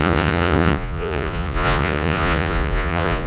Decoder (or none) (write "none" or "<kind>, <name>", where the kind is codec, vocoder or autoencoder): vocoder, Vocos